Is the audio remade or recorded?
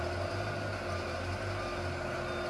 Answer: recorded